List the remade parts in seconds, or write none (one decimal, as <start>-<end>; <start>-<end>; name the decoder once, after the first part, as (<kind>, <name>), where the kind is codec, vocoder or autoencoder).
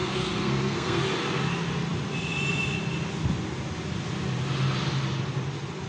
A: 0.0-1.0 (codec, SNAC)